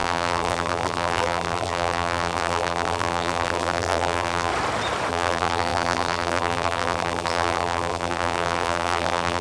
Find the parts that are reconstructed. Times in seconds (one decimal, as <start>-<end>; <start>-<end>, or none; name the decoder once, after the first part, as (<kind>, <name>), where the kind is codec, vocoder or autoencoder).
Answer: 0.0-4.5 (vocoder, BigVGAN v2); 5.1-9.4

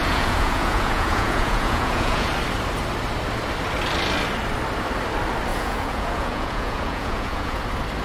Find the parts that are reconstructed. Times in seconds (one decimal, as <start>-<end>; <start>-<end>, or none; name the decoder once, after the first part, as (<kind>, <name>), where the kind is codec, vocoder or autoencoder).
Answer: 0.0-2.3 (vocoder, Vocos); 5.5-7.6

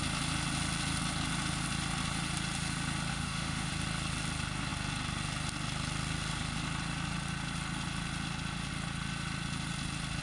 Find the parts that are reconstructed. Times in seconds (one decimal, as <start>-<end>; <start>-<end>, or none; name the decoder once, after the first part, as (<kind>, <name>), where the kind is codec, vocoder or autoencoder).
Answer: 3.1-3.7 (autoencoder, DAC-VAE)

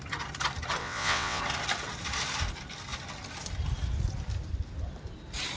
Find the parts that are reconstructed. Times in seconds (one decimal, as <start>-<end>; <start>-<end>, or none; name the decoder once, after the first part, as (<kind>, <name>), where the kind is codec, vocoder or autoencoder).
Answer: 0.8-1.4 (vocoder, WaveNeXt)

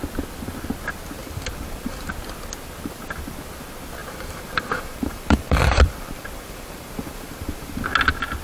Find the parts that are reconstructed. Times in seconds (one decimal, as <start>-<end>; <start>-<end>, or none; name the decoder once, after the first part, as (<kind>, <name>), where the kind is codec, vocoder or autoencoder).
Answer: 1.2-2.1 (vocoder, BigVGAN v2); 4.0-7.9

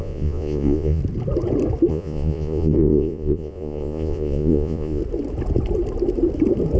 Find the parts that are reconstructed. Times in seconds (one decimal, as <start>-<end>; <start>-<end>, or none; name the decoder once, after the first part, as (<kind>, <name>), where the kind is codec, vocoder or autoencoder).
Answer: 0.0-1.0 (vocoder, Vocos); 1.9-5.0

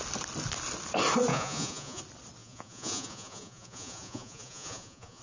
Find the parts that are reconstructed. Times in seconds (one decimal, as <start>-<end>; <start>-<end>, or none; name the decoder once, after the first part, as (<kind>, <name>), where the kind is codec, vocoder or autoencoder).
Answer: 1.3-2.0 (vocoder, Vocos); 2.4-5.2